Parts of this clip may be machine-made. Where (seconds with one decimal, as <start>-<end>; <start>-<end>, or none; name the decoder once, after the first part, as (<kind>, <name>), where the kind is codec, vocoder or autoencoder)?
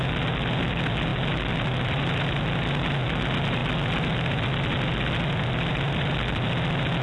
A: none